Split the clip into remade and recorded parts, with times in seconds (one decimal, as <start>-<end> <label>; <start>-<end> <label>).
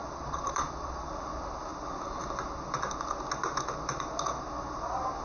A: 0.0-1.1 remade; 1.1-5.2 recorded